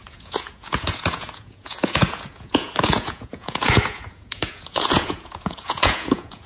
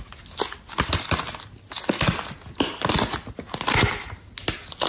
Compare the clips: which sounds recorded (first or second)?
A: second